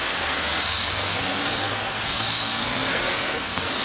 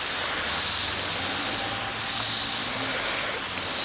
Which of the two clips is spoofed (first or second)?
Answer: first